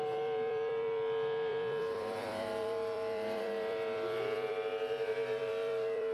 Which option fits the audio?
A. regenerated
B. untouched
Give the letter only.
A